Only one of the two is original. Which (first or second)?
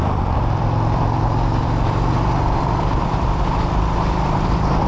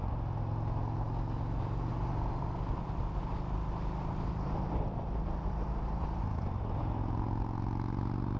second